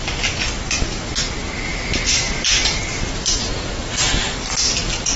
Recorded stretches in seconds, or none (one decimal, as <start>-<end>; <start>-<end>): 0.0-1.7; 4.8-5.2